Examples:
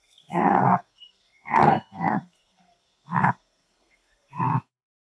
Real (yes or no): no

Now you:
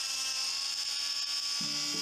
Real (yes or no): yes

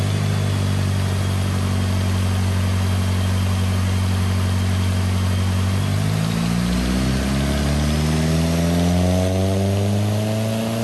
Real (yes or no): yes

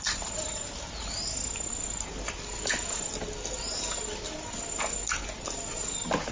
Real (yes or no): yes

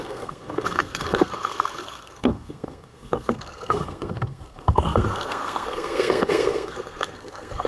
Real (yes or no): no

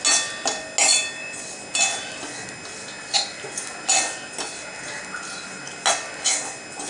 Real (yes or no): yes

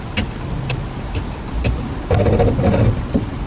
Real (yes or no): yes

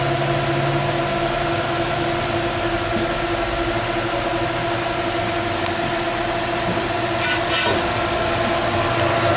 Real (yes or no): yes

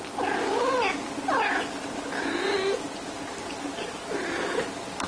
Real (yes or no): yes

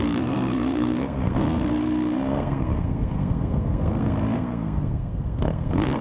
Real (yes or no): no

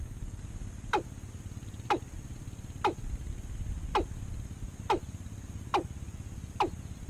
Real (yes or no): yes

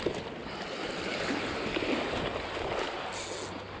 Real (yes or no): yes